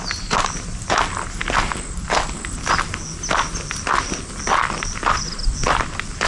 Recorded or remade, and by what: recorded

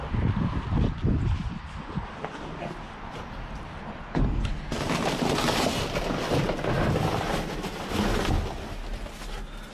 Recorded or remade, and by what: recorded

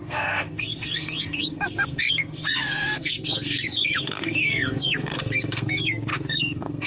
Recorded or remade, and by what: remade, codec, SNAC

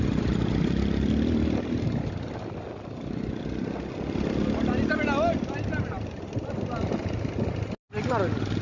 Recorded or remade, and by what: recorded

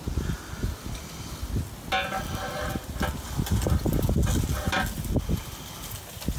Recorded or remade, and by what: recorded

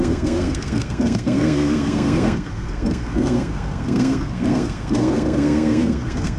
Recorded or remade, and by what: remade, codec, SNAC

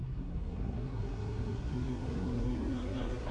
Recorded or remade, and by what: remade, codec, SNAC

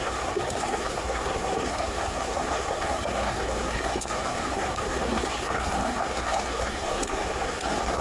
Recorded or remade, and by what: remade, codec, SNAC